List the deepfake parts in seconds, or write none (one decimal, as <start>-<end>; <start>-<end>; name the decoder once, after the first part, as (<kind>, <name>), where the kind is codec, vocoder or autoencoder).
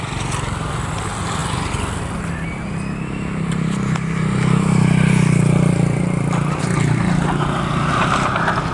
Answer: none